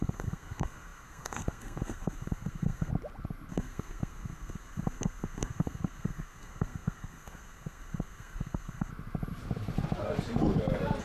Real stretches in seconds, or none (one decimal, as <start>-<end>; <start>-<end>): 2.9-3.5; 8.9-11.0